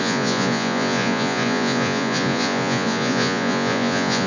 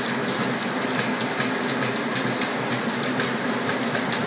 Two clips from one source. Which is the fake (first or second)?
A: first